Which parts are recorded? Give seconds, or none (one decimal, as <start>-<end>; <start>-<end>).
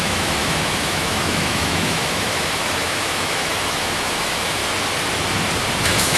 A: 4.6-5.8